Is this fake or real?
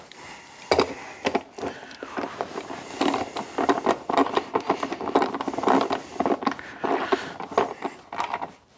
real